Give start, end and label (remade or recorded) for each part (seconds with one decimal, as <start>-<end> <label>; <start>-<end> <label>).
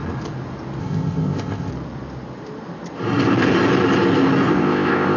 0.0-0.8 recorded; 0.8-1.7 remade; 1.7-4.5 recorded; 4.5-5.2 remade